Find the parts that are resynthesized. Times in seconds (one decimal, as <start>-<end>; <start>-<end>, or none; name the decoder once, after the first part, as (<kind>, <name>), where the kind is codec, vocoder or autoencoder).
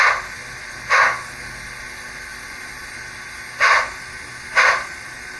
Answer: none